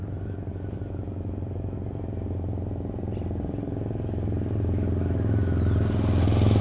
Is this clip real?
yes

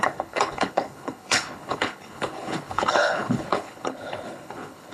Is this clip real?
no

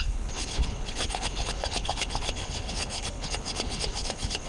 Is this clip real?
no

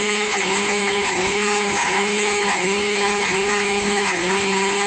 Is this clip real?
no